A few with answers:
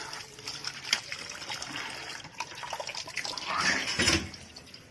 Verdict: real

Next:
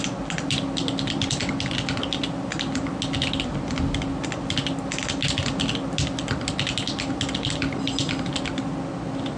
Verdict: real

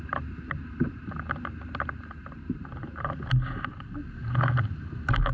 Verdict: real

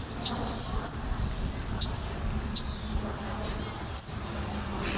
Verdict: real